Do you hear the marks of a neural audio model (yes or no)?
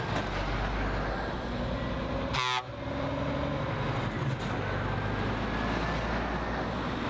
no